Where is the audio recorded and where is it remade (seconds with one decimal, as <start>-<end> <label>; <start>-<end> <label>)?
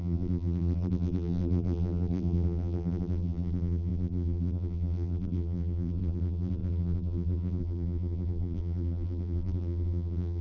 0.0-10.4 remade